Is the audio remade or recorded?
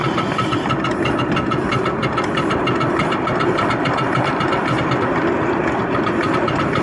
recorded